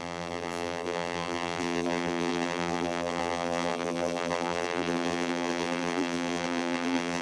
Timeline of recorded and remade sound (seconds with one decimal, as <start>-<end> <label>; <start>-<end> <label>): 0.0-7.2 remade